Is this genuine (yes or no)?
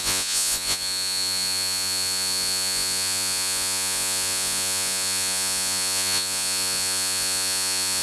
no